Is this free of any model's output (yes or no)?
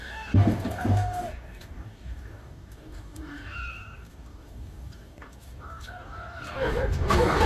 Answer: no